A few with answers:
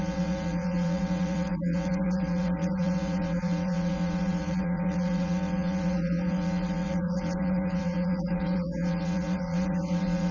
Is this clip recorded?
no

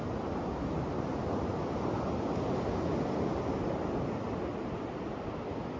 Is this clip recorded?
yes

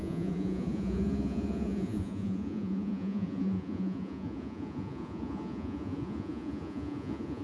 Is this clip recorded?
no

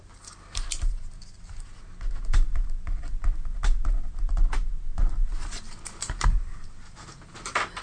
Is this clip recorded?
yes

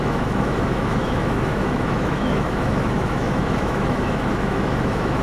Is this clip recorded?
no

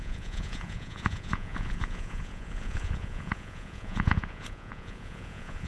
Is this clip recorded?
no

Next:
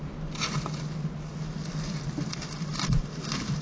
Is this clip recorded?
yes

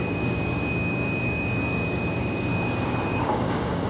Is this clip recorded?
no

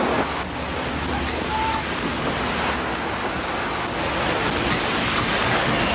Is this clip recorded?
yes